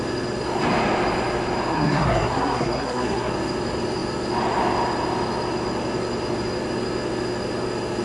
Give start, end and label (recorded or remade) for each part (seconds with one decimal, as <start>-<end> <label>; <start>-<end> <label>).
0.0-1.7 recorded; 1.7-3.3 remade; 3.3-8.0 recorded